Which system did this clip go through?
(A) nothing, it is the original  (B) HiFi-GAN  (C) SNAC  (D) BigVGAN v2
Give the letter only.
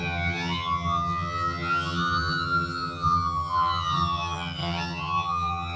B